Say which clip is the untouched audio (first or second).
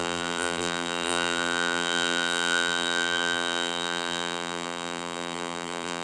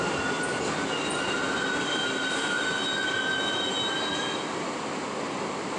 second